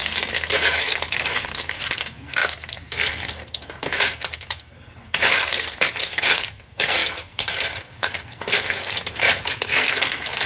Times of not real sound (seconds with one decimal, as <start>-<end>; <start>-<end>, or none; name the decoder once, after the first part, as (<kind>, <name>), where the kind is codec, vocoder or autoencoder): 0.0-10.5 (codec, SNAC)